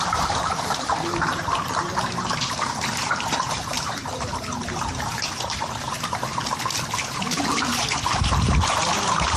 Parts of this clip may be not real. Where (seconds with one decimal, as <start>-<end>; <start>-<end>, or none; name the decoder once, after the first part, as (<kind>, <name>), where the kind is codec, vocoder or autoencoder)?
0.0-6.4 (vocoder, BigVGAN v2); 7.0-9.4